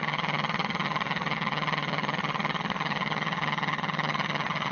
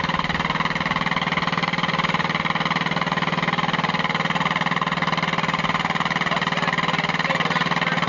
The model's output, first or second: first